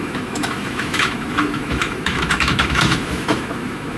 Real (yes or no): no